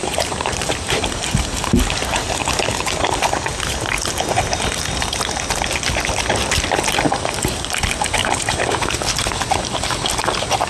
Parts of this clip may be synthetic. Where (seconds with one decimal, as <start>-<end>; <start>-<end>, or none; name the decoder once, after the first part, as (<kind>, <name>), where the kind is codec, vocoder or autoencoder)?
0.0-1.0 (vocoder, BigVGAN v2); 8.2-8.8